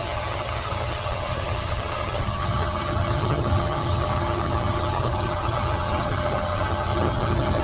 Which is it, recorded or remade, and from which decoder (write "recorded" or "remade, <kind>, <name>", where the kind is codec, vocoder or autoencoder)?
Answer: remade, vocoder, HiFi-GAN